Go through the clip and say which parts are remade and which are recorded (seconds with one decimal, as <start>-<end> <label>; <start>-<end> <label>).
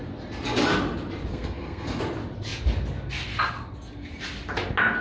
0.0-1.3 recorded; 1.3-2.0 remade; 2.0-5.0 recorded